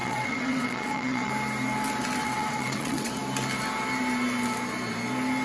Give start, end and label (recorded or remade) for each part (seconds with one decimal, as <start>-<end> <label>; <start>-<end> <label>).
0.0-1.3 remade; 1.3-2.2 recorded; 2.2-3.1 remade; 3.1-5.4 recorded